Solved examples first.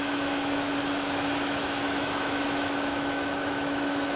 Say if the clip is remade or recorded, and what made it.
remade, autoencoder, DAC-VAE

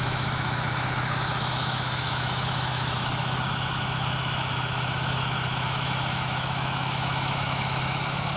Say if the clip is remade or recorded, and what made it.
remade, autoencoder, DAC-VAE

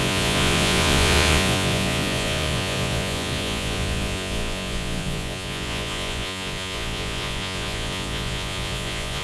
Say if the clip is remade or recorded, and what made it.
remade, vocoder, Vocos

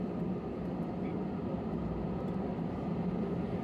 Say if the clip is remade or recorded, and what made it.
recorded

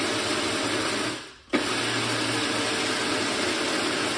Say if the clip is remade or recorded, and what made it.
recorded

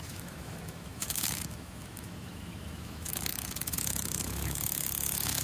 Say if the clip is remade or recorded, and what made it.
remade, autoencoder, DAC-VAE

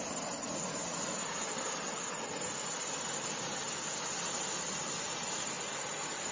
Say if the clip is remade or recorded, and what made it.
recorded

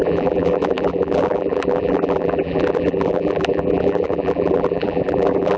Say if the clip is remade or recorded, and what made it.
remade, vocoder, BigVGAN v2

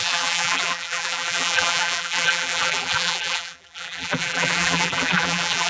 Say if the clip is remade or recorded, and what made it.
remade, vocoder, BigVGAN v2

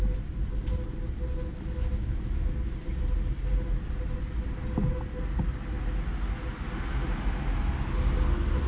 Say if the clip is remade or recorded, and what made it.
recorded